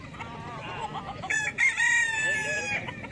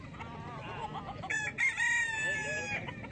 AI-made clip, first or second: first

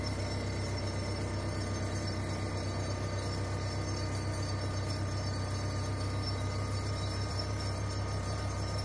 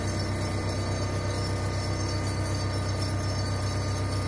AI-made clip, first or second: first